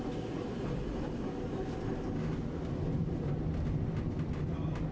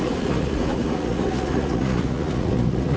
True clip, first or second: first